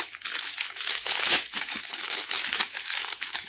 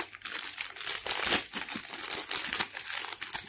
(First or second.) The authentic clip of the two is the second